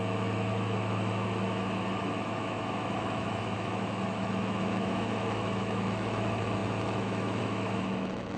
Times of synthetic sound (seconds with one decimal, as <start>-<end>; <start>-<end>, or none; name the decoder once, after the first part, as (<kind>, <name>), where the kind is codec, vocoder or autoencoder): 0.0-8.4 (autoencoder, DAC-VAE)